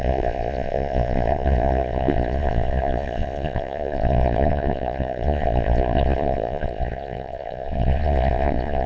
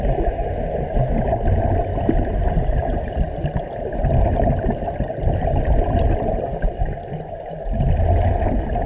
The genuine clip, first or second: second